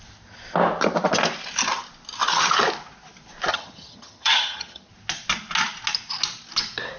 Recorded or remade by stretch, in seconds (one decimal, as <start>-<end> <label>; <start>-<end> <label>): 0.0-3.5 recorded; 3.5-4.9 remade; 4.9-7.0 recorded